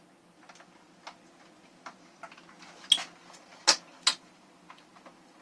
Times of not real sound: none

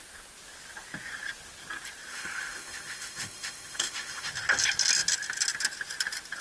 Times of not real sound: 2.1-4.3 (autoencoder, DAC-VAE)